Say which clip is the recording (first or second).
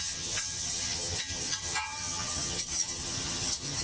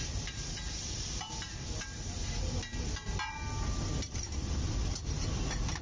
second